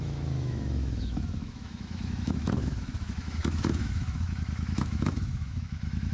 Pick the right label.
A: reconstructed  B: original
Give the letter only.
A